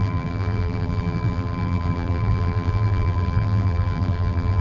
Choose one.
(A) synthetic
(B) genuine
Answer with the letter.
A